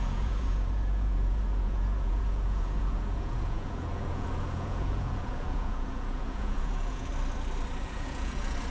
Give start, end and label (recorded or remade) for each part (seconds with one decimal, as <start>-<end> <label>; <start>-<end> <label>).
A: 0.0-7.1 remade; 7.1-7.8 recorded; 7.8-8.7 remade